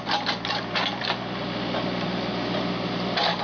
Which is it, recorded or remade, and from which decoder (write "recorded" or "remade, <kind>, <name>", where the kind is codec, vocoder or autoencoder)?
recorded